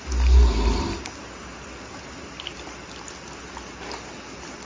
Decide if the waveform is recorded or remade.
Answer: recorded